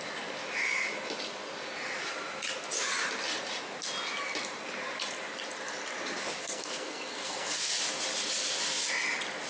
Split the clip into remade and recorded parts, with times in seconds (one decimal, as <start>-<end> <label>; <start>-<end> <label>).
0.0-6.4 recorded; 6.4-7.7 remade; 7.7-9.5 recorded

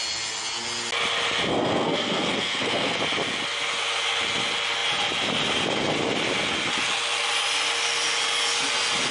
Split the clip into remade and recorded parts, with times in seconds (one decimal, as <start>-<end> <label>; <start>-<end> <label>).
0.0-1.5 recorded; 1.5-3.0 remade; 3.0-9.1 recorded

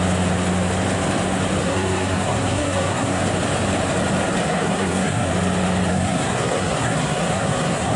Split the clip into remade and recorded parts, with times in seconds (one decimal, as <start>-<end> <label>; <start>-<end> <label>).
0.0-1.6 recorded; 1.6-3.2 remade; 3.2-4.4 recorded; 4.4-5.3 remade; 5.3-5.9 recorded; 5.9-8.0 remade